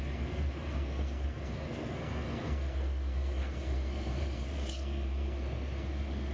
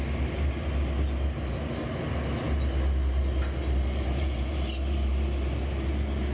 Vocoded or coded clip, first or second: first